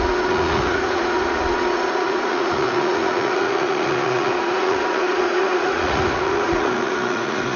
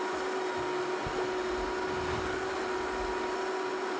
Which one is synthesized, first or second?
first